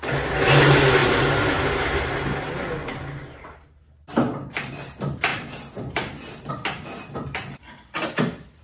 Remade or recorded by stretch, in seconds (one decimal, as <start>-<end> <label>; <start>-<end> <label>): 0.0-5.3 recorded; 5.3-6.5 remade; 6.5-8.6 recorded